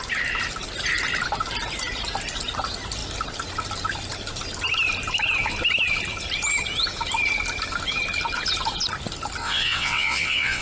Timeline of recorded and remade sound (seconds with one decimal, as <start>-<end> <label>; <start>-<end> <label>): 0.0-9.4 recorded; 9.4-10.6 remade